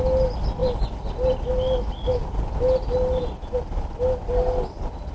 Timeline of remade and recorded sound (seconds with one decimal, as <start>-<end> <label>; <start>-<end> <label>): 0.0-5.1 recorded